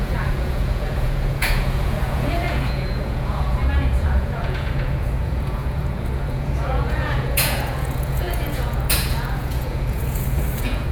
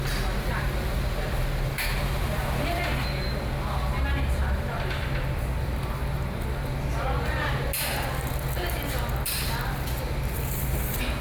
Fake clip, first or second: first